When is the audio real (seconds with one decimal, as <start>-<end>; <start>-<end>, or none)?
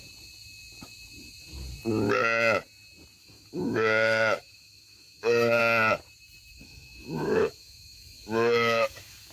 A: 0.0-3.2; 5.6-6.5